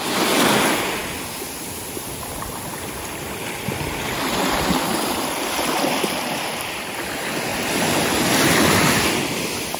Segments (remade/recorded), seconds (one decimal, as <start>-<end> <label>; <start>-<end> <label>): 0.0-1.0 recorded; 1.0-5.7 remade; 5.7-7.5 recorded; 7.5-9.1 remade; 9.1-9.8 recorded